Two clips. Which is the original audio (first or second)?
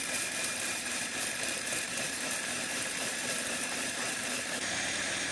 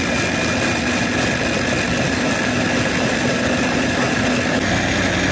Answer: second